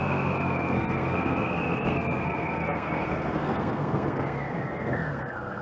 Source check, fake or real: fake